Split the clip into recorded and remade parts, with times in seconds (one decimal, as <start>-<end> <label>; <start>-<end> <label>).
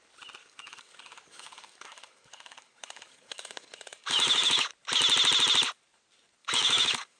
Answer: 0.0-0.4 recorded; 0.4-4.7 remade; 4.7-6.4 recorded; 6.4-7.2 remade